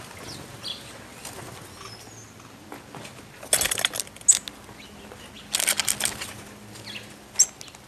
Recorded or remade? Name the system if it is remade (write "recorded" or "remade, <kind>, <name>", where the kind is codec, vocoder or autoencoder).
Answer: recorded